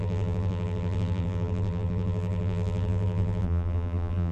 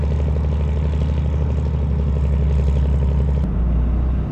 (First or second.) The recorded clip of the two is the second